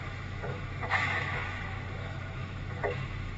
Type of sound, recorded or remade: remade